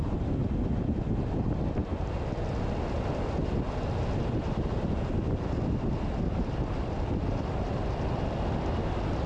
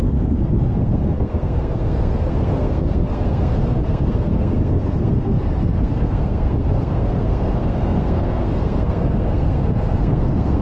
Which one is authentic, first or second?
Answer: first